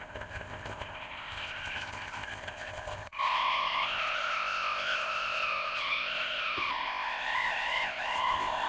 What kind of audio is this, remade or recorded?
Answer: remade